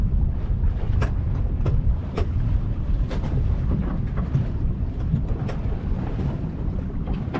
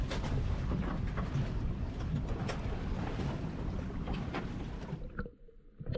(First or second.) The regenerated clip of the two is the first